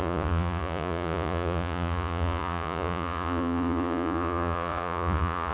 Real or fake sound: fake